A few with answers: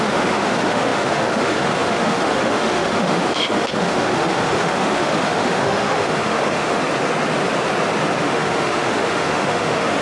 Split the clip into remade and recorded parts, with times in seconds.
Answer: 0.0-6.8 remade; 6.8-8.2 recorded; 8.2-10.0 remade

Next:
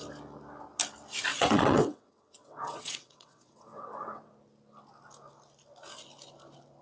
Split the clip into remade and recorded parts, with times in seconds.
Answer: 0.0-1.3 recorded; 1.3-4.3 remade; 4.3-6.8 recorded

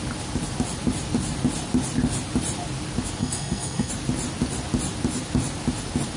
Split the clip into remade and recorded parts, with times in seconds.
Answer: 0.0-3.2 recorded; 3.2-3.9 remade; 3.9-6.2 recorded